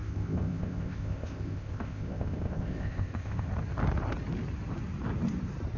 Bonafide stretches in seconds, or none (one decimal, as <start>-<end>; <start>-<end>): 3.5-5.8